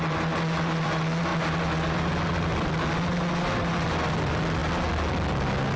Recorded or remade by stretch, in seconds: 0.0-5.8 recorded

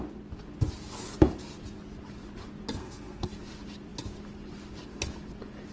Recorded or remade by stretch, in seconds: 0.0-2.8 recorded; 2.8-3.3 remade; 3.3-5.7 recorded